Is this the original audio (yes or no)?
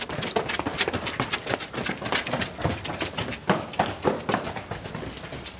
yes